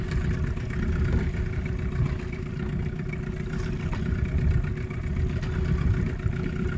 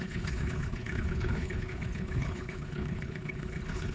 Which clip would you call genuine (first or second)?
first